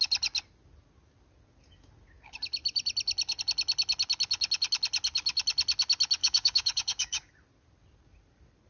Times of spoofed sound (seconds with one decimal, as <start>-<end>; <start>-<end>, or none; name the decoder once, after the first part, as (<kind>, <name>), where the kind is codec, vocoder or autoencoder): 6.2-7.3 (codec, DAC)